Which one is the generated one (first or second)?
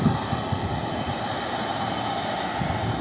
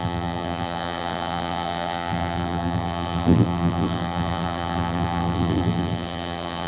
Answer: second